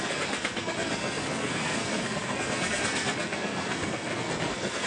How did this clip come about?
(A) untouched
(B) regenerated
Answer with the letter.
B